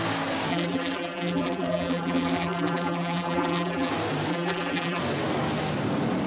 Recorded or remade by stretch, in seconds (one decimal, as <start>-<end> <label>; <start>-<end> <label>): 0.0-0.5 recorded; 0.5-3.9 remade; 3.9-4.3 recorded; 4.3-5.0 remade; 5.0-6.3 recorded